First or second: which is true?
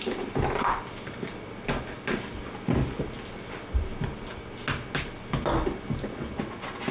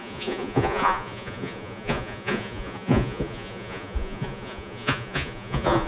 first